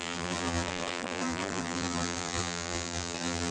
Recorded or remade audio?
remade